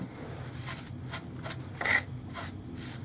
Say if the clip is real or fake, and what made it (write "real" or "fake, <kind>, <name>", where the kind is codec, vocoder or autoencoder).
real